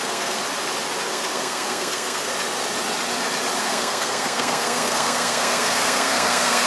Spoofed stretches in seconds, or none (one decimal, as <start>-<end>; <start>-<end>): 0.0-0.4; 1.1-2.3; 3.6-6.7